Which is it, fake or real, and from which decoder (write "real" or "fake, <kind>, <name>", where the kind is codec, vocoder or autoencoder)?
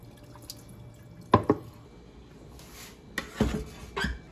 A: real